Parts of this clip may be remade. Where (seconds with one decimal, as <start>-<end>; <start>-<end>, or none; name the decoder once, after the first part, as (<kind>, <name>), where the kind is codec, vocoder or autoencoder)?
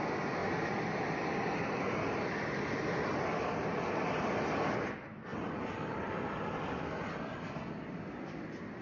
none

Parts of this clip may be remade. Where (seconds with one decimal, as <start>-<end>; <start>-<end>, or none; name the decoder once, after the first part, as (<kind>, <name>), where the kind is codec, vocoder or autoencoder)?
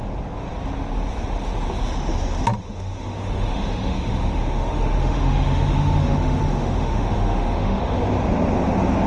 2.6-7.8 (autoencoder, DAC-VAE)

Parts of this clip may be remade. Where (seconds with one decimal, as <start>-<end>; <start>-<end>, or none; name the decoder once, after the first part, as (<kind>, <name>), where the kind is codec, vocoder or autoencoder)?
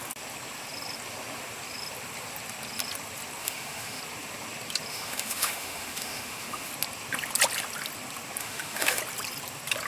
3.4-4.0 (autoencoder, DAC-VAE); 4.9-6.7; 8.4-9.0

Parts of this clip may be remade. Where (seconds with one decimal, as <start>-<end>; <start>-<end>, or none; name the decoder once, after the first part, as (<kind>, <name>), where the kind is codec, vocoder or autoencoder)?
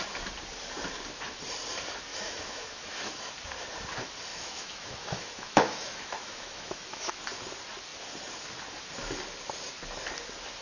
2.1-3.3 (autoencoder, DAC-VAE); 4.3-7.2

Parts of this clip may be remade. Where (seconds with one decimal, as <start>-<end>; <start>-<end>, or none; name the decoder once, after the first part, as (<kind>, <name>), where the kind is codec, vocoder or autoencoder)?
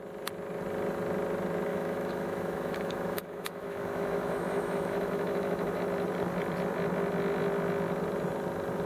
1.7-5.8 (autoencoder, DAC-VAE)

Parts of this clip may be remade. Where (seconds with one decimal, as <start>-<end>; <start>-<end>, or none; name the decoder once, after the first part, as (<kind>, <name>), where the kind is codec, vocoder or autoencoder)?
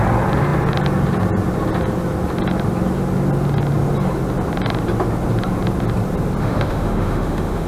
6.4-7.7 (autoencoder, DAC-VAE)